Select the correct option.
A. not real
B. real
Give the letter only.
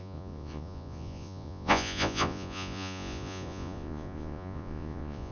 A